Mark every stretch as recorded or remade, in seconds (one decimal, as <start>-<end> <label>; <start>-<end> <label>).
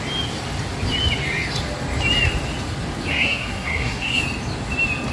0.0-3.1 recorded; 3.1-4.2 remade; 4.2-5.1 recorded